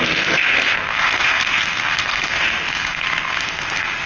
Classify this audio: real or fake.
fake